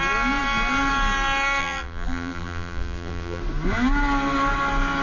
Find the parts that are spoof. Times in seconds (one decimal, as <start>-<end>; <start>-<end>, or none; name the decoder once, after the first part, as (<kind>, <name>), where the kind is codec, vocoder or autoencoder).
1.6-3.4 (vocoder, BigVGAN v2)